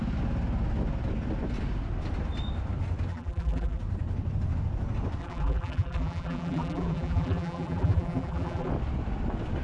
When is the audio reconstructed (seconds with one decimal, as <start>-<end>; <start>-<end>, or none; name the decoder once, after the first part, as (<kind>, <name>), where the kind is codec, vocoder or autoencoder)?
3.1-3.8 (vocoder, BigVGAN v2); 5.2-8.7